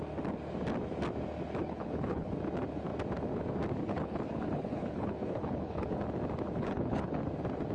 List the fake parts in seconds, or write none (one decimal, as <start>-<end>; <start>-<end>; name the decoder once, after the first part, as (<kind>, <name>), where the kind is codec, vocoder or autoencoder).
1.6-2.3 (codec, HILCodec); 3.8-6.0; 6.6-7.2